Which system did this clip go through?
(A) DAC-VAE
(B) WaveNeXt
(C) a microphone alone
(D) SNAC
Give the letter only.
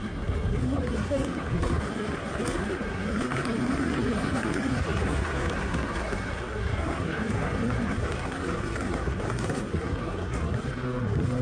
D